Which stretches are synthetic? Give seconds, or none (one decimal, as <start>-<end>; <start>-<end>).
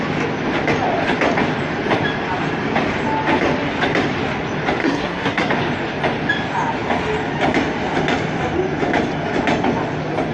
4.8-5.5